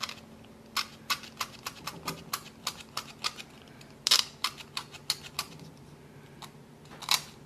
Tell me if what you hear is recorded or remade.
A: recorded